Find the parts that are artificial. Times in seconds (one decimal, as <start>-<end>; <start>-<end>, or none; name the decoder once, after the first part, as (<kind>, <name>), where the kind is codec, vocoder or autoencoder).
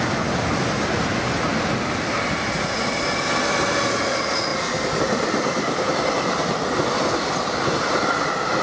none